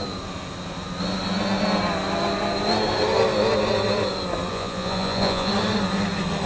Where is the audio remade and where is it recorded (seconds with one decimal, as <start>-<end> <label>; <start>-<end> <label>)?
0.0-4.5 recorded; 4.5-5.5 remade; 5.5-6.5 recorded